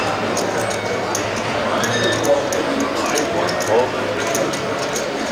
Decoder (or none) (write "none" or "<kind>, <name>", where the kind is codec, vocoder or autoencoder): none